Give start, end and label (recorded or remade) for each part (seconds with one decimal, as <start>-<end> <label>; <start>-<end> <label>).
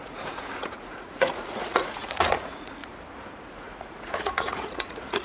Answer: 0.0-2.8 remade; 2.8-3.5 recorded; 3.5-5.2 remade